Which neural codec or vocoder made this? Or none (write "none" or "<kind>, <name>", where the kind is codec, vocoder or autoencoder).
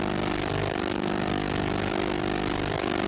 none